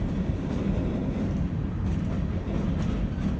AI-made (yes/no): no